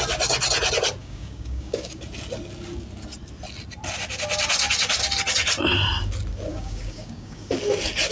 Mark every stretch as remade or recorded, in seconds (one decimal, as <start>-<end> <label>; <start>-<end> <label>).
0.0-1.0 recorded; 1.0-2.0 remade; 2.0-6.5 recorded; 6.5-7.5 remade; 7.5-8.1 recorded